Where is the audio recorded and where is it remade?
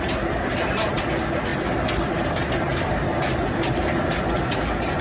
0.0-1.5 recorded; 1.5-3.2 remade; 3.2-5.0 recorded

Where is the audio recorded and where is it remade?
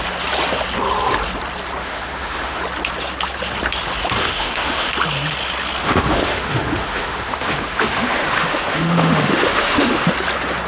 0.0-1.8 recorded; 1.8-2.6 remade; 2.6-4.2 recorded; 4.2-4.9 remade; 4.9-5.8 recorded; 5.8-10.1 remade; 10.1-10.7 recorded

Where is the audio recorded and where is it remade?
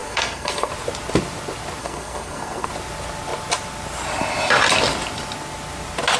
0.0-0.7 remade; 0.7-1.8 recorded; 1.8-2.7 remade; 2.7-6.2 recorded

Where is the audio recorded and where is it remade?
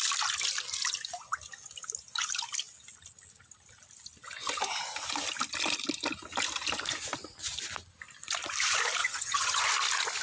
0.0-9.0 recorded; 9.0-9.6 remade; 9.6-10.2 recorded